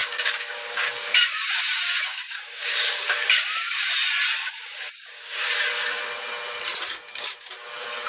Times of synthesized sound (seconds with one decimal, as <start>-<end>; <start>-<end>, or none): 0.0-3.9; 4.4-5.5; 6.9-7.5